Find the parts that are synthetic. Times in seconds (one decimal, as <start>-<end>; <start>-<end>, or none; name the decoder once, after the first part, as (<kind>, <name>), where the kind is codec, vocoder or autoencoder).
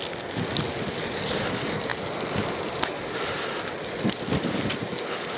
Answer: none